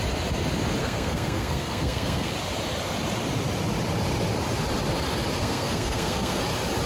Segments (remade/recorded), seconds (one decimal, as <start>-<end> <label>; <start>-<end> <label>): 0.0-0.8 recorded; 0.8-2.3 remade; 2.3-5.4 recorded; 5.4-6.4 remade; 6.4-6.9 recorded